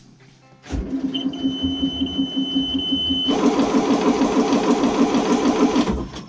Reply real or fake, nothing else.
real